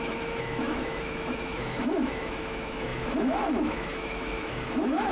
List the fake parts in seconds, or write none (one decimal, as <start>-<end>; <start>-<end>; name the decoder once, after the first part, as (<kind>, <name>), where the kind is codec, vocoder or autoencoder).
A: 0.0-5.1 (autoencoder, DAC-VAE)